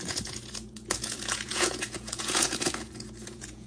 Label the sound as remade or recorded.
remade